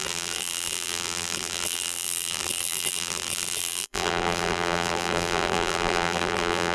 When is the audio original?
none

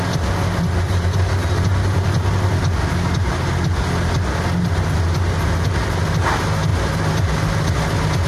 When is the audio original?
0.0-8.3

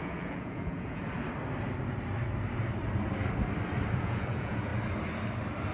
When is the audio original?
1.0-4.0; 4.7-5.7

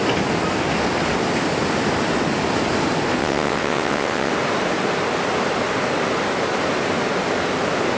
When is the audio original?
0.0-3.2; 4.3-8.0

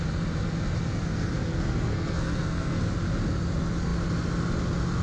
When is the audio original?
0.0-0.9; 2.8-5.0